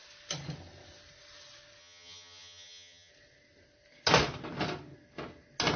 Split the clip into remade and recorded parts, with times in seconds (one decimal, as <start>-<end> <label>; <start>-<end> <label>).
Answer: 0.0-1.8 recorded; 1.8-3.1 remade; 3.1-5.8 recorded